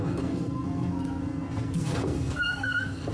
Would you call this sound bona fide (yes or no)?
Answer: no